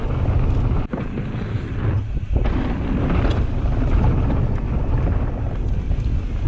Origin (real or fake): real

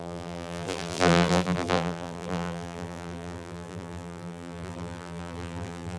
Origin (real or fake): fake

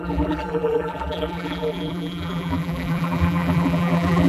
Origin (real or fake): fake